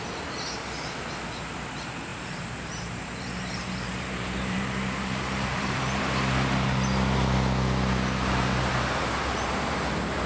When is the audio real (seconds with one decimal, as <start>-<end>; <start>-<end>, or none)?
0.0-2.1; 6.0-10.3